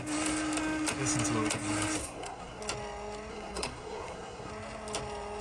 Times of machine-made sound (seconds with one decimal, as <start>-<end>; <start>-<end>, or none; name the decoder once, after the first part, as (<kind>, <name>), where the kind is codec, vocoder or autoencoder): 2.0-2.6 (codec, SNAC); 3.3-4.5